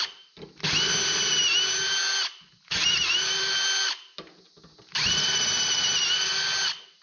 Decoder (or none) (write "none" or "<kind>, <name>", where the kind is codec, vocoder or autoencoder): none